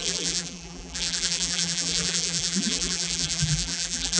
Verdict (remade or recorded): remade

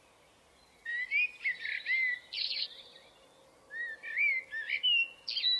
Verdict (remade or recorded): recorded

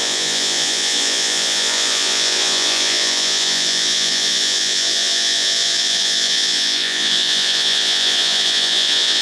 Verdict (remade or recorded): remade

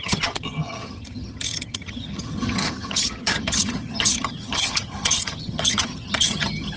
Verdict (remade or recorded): remade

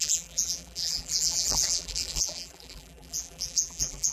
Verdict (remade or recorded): remade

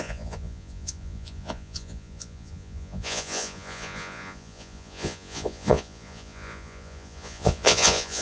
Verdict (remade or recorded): remade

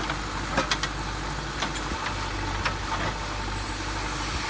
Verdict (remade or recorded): recorded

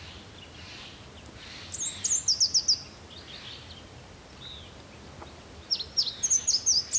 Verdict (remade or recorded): recorded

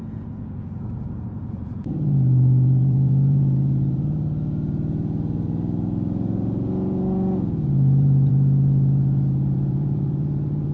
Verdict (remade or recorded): remade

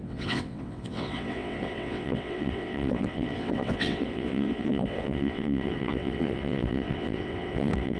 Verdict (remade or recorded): remade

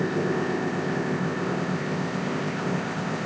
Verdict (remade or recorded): remade